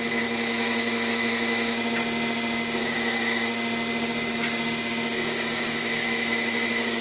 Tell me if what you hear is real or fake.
real